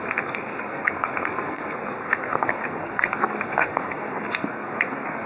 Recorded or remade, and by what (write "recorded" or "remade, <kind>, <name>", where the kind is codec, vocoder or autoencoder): remade, codec, SNAC